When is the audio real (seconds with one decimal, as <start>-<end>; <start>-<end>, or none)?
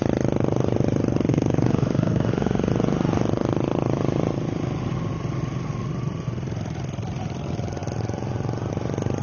0.0-1.3; 2.7-9.2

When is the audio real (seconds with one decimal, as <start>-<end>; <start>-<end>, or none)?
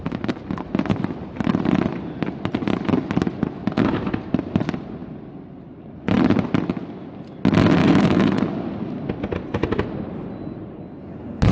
0.0-7.8; 8.4-11.5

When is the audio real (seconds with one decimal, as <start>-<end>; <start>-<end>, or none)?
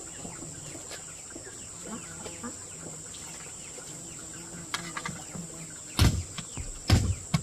0.0-7.4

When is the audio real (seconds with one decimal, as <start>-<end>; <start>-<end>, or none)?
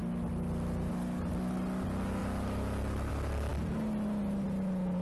0.0-5.0